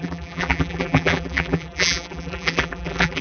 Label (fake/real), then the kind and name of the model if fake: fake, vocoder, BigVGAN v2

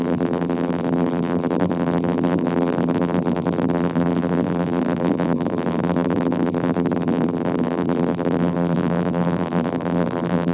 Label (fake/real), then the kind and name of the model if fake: fake, vocoder, BigVGAN v2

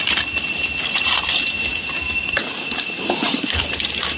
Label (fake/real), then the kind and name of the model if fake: real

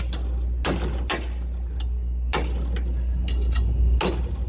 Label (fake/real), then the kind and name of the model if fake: real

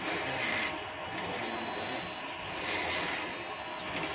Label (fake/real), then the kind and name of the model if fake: real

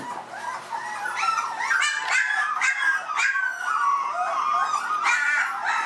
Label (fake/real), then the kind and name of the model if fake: real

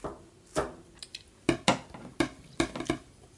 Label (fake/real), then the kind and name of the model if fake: real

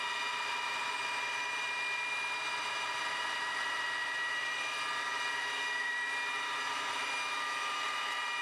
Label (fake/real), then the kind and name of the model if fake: fake, vocoder, BigVGAN v2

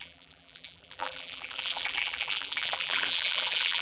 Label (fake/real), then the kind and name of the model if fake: fake, vocoder, BigVGAN v2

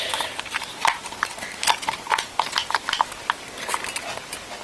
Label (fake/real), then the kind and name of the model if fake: fake, vocoder, BigVGAN v2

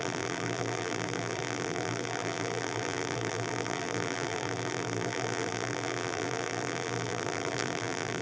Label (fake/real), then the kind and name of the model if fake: fake, vocoder, BigVGAN v2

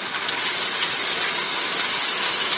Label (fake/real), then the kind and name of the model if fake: real